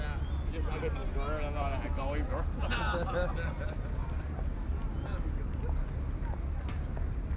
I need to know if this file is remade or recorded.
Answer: recorded